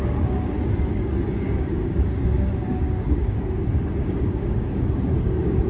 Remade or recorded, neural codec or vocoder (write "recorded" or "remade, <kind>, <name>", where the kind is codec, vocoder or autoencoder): remade, codec, DAC